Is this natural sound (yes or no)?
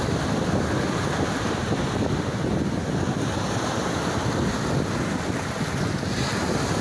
yes